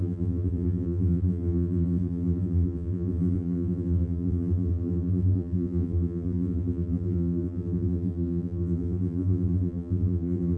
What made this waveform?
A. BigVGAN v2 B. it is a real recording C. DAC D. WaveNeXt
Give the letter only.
A